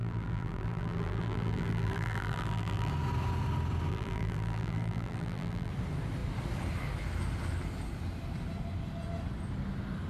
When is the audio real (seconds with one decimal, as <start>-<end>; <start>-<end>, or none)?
2.9-3.9; 5.7-10.1